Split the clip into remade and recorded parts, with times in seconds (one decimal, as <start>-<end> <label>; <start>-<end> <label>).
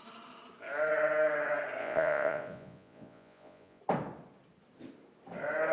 0.0-1.8 recorded; 1.8-3.8 remade; 3.8-5.7 recorded